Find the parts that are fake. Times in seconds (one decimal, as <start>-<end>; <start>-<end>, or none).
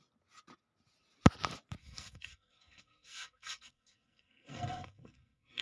1.8-5.6